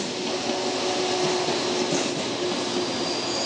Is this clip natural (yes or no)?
yes